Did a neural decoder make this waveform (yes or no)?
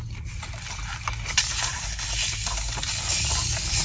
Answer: no